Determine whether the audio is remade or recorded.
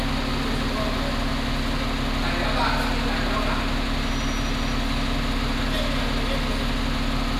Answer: recorded